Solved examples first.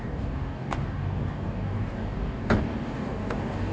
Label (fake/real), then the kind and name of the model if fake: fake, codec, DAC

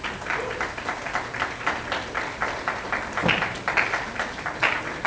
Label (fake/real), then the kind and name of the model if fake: real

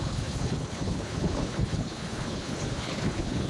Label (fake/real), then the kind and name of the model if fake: fake, codec, HILCodec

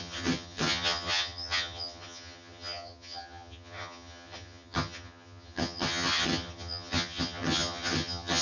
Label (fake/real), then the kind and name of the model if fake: fake, vocoder, HiFi-GAN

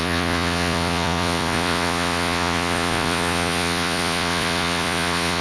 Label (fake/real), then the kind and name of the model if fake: fake, vocoder, Vocos